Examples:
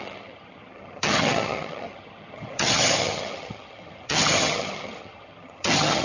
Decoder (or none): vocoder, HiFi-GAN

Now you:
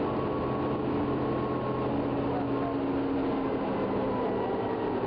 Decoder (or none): none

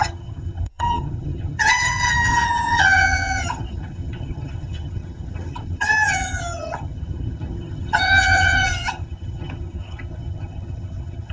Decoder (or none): vocoder, HiFi-GAN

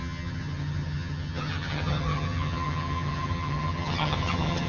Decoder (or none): vocoder, HiFi-GAN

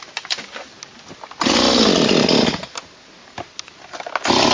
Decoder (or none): none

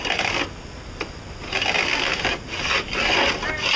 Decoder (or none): none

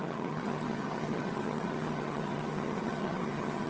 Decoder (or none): vocoder, HiFi-GAN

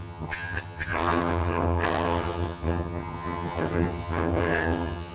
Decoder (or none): vocoder, HiFi-GAN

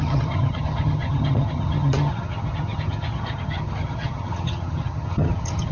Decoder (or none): vocoder, HiFi-GAN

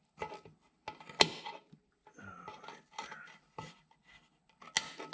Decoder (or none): none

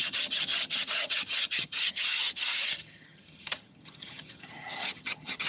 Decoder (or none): vocoder, HiFi-GAN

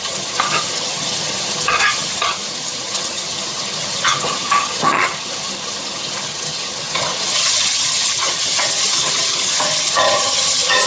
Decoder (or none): vocoder, HiFi-GAN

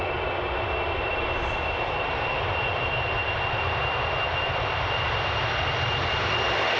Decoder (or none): none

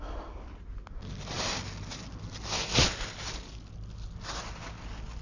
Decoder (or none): none